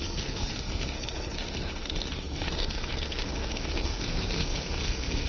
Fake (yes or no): yes